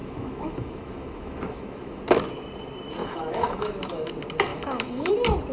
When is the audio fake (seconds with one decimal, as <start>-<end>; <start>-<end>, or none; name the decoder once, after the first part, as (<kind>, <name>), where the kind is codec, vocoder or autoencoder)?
0.0-2.0 (autoencoder, DAC-VAE); 3.0-4.1; 4.5-5.1